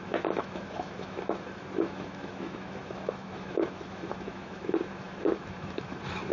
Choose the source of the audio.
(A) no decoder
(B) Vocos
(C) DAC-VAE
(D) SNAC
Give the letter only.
C